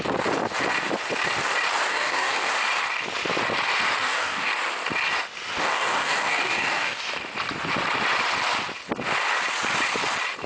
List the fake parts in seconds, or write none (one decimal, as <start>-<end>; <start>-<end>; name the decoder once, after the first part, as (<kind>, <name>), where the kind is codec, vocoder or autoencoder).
1.9-2.5 (codec, DAC); 4.0-4.5; 5.6-7.0